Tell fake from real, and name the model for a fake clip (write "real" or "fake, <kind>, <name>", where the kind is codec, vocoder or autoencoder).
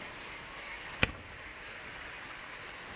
real